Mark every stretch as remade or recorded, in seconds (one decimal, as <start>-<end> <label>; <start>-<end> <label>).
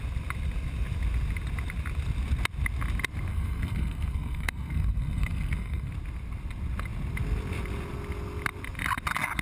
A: 0.0-3.3 recorded; 3.3-5.9 remade; 5.9-9.4 recorded